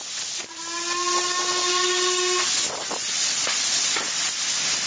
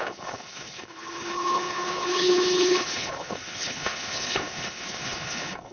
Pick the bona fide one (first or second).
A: first